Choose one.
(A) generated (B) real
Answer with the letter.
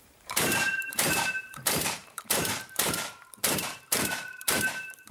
A